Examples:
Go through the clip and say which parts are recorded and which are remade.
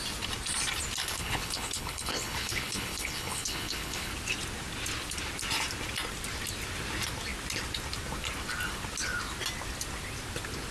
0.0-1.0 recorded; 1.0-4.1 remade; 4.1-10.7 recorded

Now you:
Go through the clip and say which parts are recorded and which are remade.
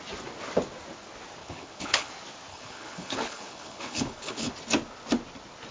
0.0-1.4 recorded; 1.4-2.1 remade; 2.1-2.5 recorded; 2.5-4.5 remade; 4.5-5.7 recorded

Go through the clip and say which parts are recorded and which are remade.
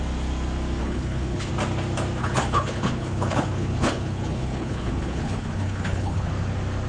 0.0-0.8 recorded; 0.8-1.5 remade; 1.5-2.2 recorded; 2.2-6.3 remade; 6.3-6.9 recorded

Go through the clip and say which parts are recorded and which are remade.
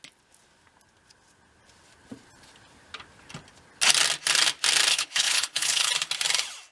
0.0-4.9 recorded; 4.9-5.9 remade; 5.9-6.7 recorded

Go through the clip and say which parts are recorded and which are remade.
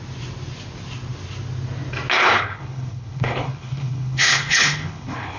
0.0-2.2 recorded; 2.2-5.4 remade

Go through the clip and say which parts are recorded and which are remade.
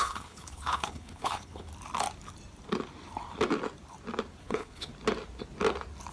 0.0-1.7 remade; 1.7-4.4 recorded; 4.4-4.9 remade; 4.9-6.1 recorded